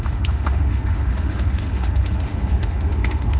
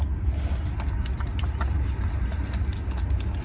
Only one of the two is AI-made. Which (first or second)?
first